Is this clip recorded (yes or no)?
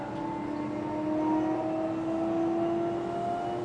yes